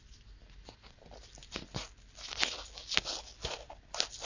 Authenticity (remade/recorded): recorded